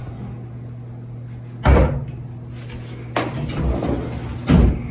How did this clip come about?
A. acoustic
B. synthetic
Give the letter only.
A